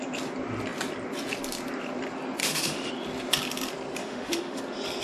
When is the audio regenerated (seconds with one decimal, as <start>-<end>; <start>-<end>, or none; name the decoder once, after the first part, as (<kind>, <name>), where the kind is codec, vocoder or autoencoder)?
2.4-2.9 (autoencoder, DAC-VAE); 4.0-4.6

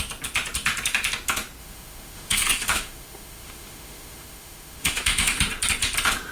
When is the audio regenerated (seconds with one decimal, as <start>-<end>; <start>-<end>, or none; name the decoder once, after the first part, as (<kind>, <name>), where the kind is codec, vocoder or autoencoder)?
1.6-5.4 (autoencoder, DAC-VAE)

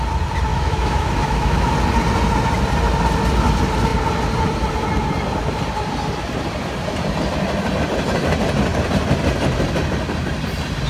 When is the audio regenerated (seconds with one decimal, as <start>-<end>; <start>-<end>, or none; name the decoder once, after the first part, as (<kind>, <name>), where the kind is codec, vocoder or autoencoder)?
0.5-1.7 (autoencoder, DAC-VAE)

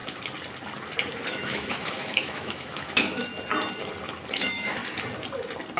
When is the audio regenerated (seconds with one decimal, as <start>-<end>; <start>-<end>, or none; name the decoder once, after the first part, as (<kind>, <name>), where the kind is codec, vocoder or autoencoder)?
1.3-3.3 (autoencoder, DAC-VAE); 4.3-4.8